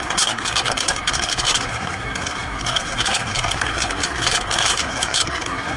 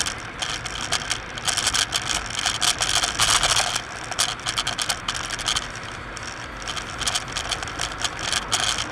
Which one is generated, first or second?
first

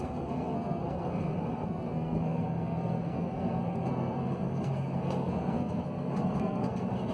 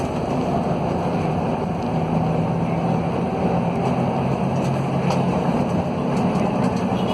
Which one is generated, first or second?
first